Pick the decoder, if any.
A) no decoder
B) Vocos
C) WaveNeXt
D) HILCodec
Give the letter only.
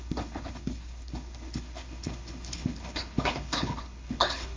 D